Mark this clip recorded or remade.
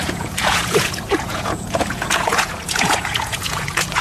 remade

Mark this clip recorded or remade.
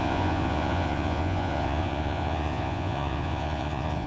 remade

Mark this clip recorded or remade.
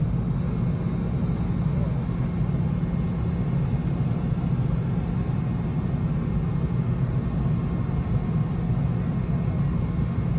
recorded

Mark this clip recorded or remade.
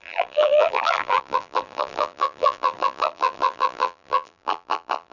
remade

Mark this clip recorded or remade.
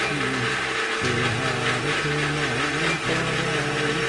recorded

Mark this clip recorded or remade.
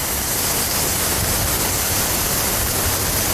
recorded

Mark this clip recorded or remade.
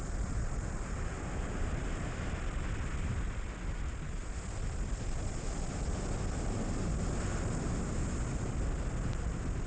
recorded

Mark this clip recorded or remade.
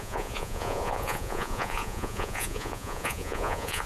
remade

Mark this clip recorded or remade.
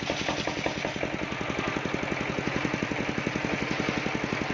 recorded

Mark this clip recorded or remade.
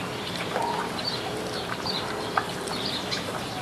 remade